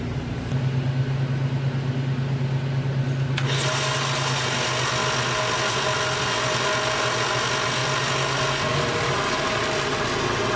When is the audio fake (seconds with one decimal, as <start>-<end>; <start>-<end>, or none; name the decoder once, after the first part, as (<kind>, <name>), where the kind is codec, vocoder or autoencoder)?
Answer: none